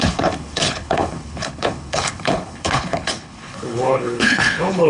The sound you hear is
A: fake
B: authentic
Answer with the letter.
A